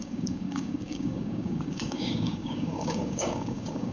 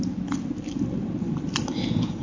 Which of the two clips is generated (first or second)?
first